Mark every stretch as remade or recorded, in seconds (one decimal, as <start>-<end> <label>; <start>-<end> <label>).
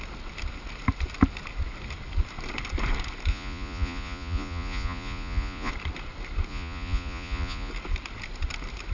0.0-3.3 recorded; 3.3-5.7 remade; 5.7-6.5 recorded; 6.5-7.7 remade; 7.7-8.9 recorded